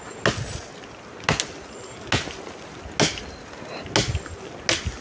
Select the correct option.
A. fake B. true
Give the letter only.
B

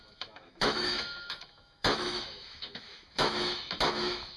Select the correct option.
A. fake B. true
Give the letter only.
A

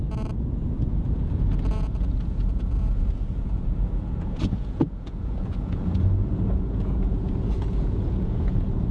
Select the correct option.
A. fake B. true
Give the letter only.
A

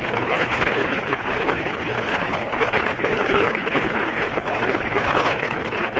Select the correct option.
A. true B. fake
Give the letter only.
B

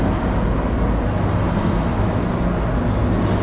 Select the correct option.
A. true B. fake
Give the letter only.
A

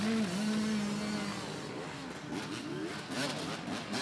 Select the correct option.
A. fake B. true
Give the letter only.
B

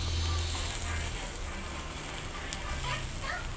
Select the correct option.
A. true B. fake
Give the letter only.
A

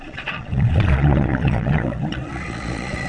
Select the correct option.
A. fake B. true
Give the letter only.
A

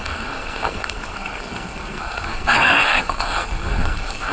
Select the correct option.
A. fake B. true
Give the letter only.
A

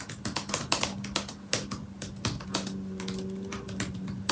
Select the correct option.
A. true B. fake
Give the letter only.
A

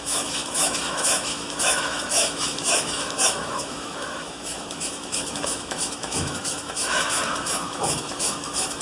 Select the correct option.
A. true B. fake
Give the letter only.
B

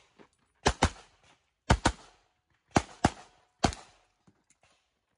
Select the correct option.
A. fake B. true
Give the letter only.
B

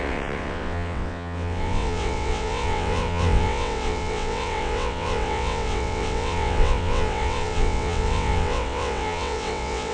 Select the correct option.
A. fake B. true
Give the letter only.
A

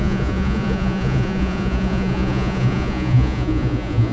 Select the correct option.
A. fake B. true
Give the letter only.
A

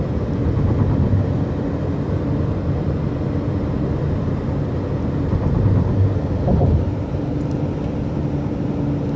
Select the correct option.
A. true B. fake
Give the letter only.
A